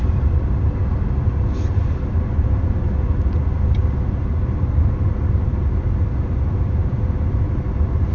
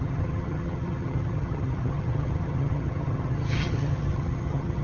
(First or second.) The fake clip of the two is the second